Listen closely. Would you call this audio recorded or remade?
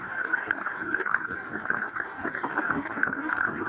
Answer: remade